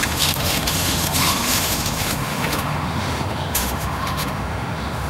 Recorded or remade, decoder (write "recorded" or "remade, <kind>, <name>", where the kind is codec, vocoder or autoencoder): remade, autoencoder, DAC-VAE